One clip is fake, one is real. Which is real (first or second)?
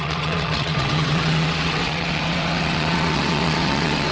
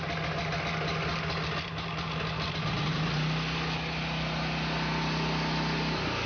second